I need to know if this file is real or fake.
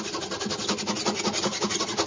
real